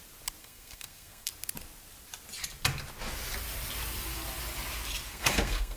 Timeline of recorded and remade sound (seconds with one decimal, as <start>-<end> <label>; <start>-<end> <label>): 0.0-0.4 recorded; 0.4-1.3 remade; 1.3-5.1 recorded; 5.1-5.8 remade